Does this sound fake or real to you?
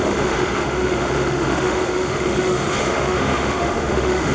fake